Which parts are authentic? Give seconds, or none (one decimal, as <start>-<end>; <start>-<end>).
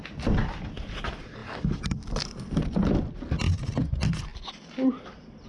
0.0-1.4; 2.8-5.5